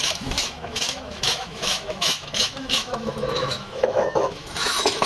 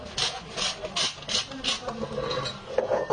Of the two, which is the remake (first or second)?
first